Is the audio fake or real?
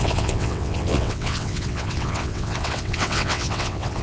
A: fake